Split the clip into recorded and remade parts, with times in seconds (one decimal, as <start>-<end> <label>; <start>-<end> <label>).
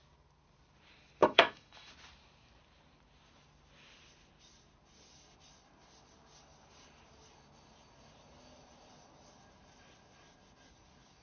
0.0-1.2 recorded; 1.2-1.9 remade; 1.9-11.2 recorded